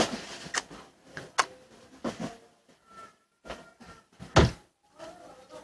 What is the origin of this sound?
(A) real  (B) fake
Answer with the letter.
A